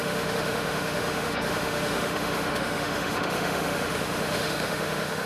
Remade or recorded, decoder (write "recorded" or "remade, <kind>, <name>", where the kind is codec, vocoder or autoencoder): remade, autoencoder, DAC-VAE